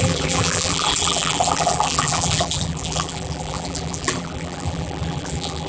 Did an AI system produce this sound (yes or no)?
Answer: yes